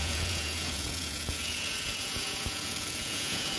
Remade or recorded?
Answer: remade